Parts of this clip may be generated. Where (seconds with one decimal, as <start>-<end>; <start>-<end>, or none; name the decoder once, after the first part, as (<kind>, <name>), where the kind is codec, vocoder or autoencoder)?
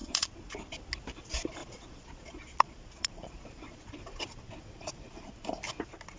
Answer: 0.0-0.5 (vocoder, Vocos); 1.6-5.3